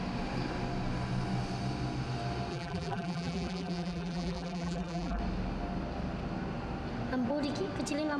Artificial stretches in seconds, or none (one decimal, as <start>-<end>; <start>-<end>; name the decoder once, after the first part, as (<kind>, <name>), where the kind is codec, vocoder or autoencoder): 2.5-5.2 (vocoder, BigVGAN v2)